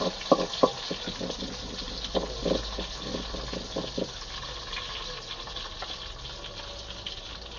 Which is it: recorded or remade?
recorded